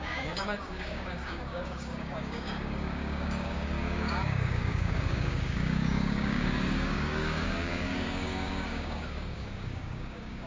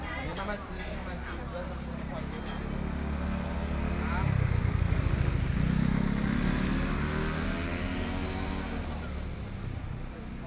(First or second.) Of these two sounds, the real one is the second